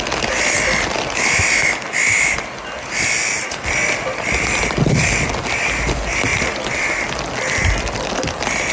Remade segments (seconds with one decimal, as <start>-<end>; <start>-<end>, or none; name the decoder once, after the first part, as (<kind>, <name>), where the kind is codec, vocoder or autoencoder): 6.3-6.8 (vocoder, BigVGAN v2)